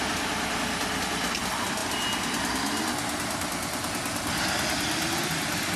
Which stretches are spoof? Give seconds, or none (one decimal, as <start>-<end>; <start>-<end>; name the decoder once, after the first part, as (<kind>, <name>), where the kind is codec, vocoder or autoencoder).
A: none